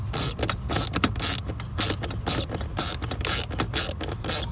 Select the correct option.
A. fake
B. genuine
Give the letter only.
B